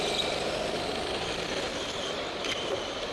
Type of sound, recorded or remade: recorded